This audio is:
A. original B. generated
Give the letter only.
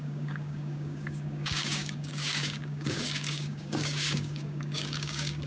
B